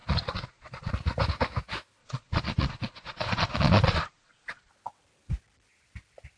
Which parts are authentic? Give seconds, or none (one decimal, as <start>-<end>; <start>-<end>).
0.9-2.0; 4.7-6.4